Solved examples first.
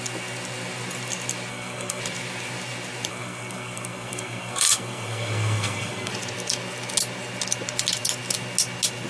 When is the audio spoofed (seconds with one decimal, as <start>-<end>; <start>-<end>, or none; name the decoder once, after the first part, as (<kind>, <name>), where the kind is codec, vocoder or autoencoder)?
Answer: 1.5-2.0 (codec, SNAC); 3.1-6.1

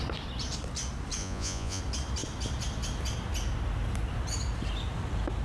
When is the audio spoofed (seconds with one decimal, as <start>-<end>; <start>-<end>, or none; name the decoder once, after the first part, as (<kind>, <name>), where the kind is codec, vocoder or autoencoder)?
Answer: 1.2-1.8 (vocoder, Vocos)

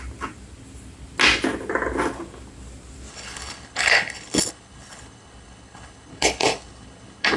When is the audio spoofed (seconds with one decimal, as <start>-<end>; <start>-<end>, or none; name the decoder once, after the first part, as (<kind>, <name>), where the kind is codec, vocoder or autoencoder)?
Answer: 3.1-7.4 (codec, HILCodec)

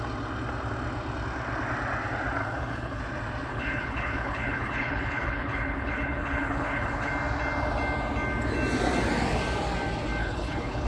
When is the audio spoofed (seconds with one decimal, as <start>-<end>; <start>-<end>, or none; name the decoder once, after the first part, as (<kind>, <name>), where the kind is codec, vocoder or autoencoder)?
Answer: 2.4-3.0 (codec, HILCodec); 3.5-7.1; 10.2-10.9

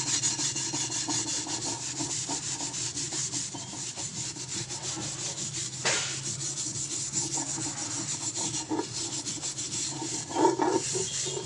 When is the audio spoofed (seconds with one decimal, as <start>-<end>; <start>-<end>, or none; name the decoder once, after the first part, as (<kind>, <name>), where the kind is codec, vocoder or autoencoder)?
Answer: none

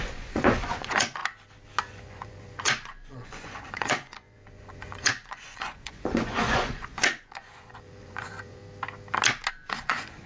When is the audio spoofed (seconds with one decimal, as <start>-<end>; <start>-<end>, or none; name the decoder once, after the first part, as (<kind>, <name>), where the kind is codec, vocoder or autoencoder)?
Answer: 0.0-1.2 (vocoder, Vocos); 1.8-8.6; 9.5-10.3

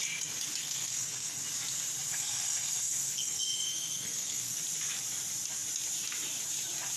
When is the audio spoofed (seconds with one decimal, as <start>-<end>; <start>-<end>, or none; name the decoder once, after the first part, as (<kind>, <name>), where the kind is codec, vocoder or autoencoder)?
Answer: 0.6-1.4 (codec, SNAC); 2.1-4.6